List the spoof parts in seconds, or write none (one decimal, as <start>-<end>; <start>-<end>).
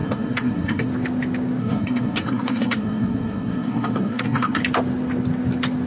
0.0-0.9; 1.6-4.6